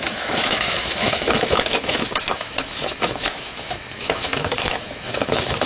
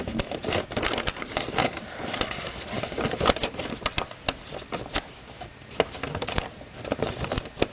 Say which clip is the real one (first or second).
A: second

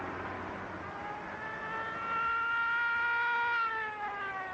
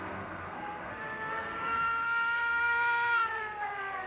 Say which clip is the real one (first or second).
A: first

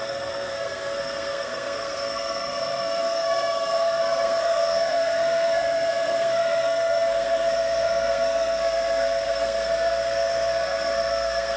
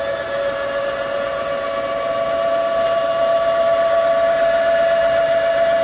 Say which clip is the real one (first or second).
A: second